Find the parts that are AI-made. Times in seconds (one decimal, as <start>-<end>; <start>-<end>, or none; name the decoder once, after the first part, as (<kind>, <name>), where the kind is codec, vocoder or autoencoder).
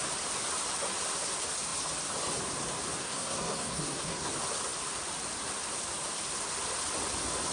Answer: 3.0-4.3 (codec, SNAC)